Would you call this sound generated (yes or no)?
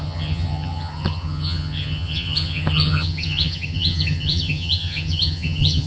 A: yes